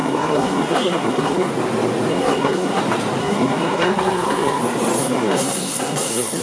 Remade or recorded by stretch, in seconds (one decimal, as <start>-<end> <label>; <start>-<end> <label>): 0.0-1.5 remade; 1.5-2.1 recorded; 2.1-2.8 remade; 2.8-3.2 recorded; 3.2-4.6 remade; 4.6-5.0 recorded; 5.0-6.4 remade